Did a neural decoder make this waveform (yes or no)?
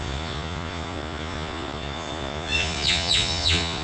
yes